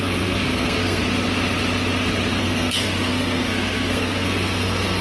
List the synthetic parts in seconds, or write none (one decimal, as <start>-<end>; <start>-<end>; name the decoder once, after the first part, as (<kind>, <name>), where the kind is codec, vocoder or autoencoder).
0.0-1.0 (codec, SNAC); 2.4-5.0